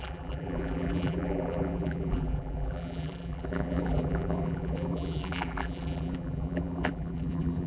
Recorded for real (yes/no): no